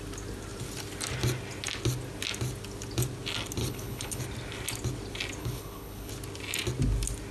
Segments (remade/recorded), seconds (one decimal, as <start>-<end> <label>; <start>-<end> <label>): 0.0-3.6 recorded; 3.6-4.2 remade; 4.2-5.4 recorded; 5.4-6.1 remade; 6.1-7.3 recorded